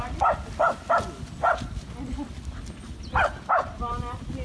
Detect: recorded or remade recorded